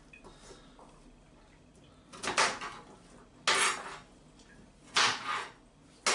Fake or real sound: real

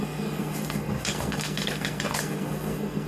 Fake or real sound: fake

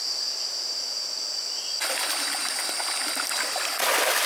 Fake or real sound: real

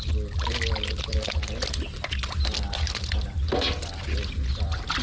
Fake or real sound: real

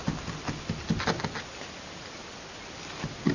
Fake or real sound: real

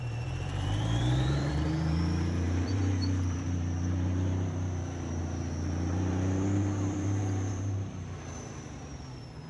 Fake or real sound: fake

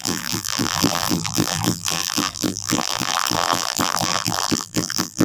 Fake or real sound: fake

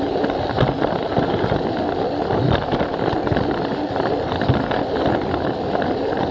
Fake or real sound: real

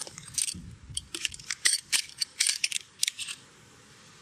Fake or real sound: fake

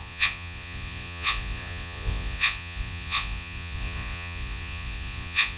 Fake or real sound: fake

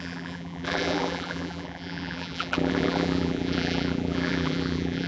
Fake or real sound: fake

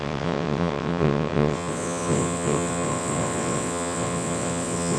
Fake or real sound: fake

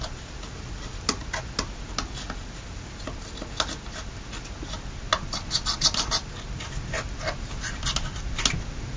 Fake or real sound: real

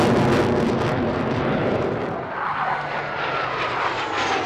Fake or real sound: real